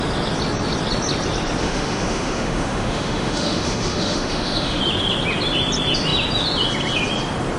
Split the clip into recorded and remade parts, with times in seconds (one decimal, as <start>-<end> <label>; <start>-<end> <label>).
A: 0.0-1.6 recorded; 1.6-4.8 remade; 4.8-7.6 recorded